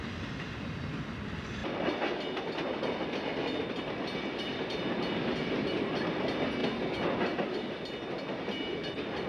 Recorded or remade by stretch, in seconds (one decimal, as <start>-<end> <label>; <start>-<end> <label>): 0.0-9.3 recorded